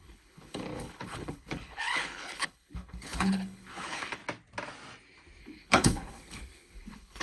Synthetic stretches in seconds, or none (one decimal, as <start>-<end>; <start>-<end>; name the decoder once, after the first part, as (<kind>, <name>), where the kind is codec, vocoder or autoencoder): 0.0-4.2 (codec, HILCodec); 5.4-7.2

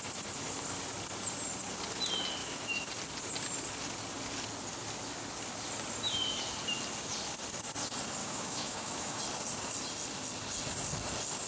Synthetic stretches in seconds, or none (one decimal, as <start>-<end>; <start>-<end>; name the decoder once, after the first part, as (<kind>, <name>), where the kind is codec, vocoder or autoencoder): 2.4-2.9 (autoencoder, DAC-VAE); 8.2-9.2

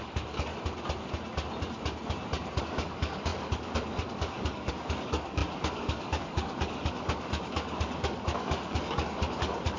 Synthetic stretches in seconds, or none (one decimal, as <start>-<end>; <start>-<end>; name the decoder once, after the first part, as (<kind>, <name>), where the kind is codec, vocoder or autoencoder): 0.0-0.5 (codec, DAC); 2.6-9.8

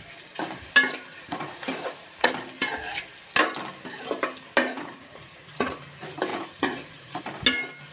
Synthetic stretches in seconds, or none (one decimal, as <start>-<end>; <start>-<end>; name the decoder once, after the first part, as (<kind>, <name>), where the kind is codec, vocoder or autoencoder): 1.1-2.3 (vocoder, Vocos); 4.6-5.8; 6.3-7.2